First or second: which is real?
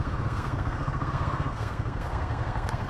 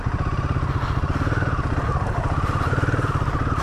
second